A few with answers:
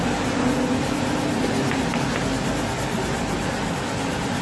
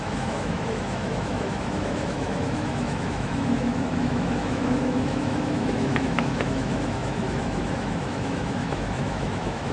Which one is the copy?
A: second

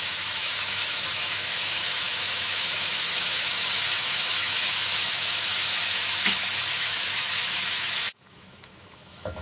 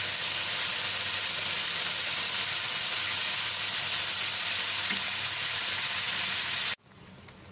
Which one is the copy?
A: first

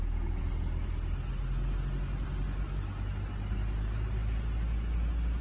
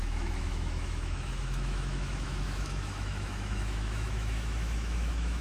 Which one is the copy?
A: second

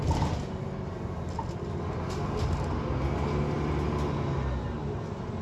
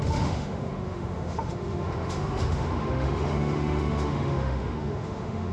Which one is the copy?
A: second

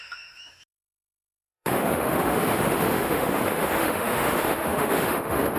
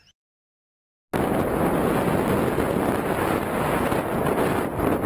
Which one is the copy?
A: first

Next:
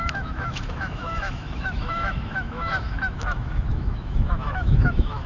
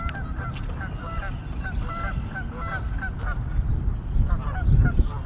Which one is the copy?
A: first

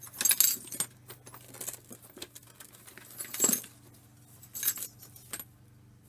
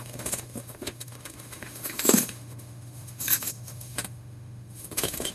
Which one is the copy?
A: second